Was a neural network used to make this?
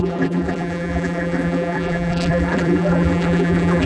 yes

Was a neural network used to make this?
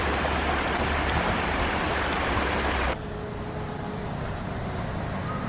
yes